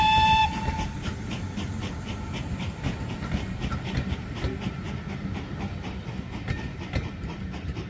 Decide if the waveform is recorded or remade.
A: recorded